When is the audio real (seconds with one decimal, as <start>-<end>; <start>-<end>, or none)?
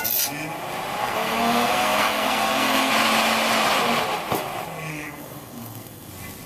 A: 0.0-1.0; 2.9-4.9; 6.1-6.5